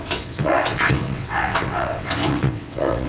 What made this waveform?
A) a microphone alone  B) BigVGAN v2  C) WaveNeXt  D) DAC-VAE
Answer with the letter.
C